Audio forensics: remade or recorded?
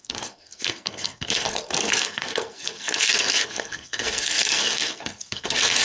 remade